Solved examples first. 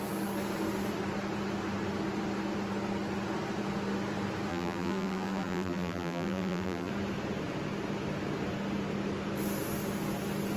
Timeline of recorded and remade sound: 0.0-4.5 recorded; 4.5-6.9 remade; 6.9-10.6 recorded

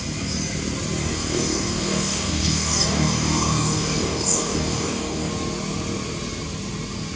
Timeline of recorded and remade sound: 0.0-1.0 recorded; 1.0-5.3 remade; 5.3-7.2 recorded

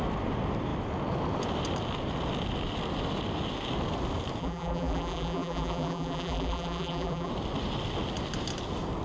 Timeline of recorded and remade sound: 0.0-4.4 recorded; 4.4-7.3 remade; 7.3-9.0 recorded

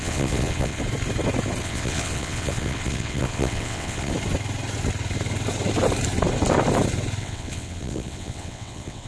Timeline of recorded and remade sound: 0.0-0.8 remade; 0.8-1.6 recorded; 1.6-4.1 remade; 4.1-7.2 recorded; 7.2-9.1 remade

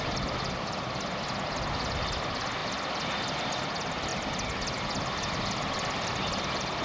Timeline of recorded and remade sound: 0.0-2.6 recorded; 2.6-3.5 remade; 3.5-4.1 recorded; 4.1-6.1 remade; 6.1-6.8 recorded

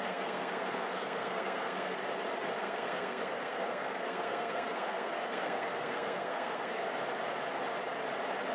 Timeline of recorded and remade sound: 0.0-2.0 remade; 2.0-2.6 recorded; 2.6-6.8 remade; 6.8-8.5 recorded

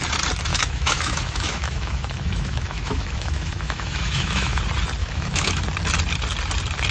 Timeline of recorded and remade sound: 0.0-0.5 recorded; 0.5-4.6 remade; 4.6-5.0 recorded; 5.0-5.6 remade; 5.6-6.9 recorded

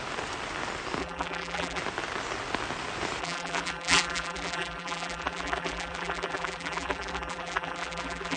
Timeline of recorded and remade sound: 0.0-1.0 recorded; 1.0-1.8 remade; 1.8-3.2 recorded; 3.2-8.4 remade